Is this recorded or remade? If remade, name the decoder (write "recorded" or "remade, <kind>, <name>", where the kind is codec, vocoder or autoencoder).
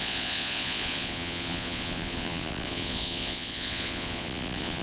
remade, vocoder, Vocos